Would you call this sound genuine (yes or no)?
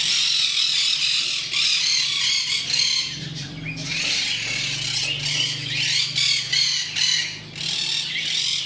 yes